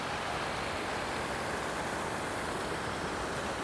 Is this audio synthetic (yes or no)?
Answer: no